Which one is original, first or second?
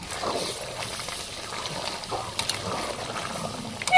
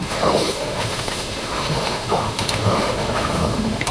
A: first